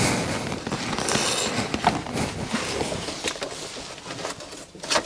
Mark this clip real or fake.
real